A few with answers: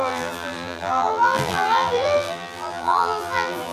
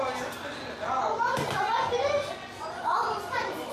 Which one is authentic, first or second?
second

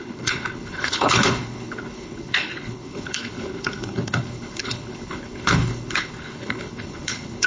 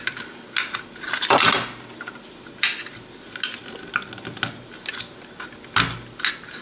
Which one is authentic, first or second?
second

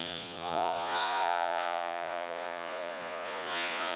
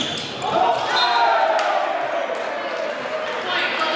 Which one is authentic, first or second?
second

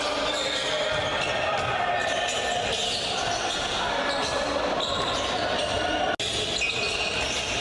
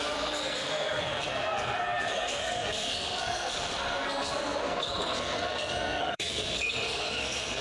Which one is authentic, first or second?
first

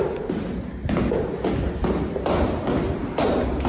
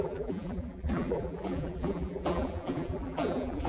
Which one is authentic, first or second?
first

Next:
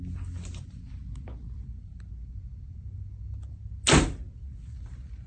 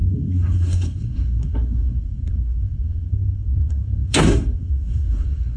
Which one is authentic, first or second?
first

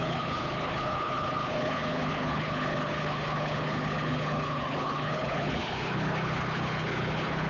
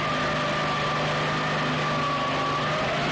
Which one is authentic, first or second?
second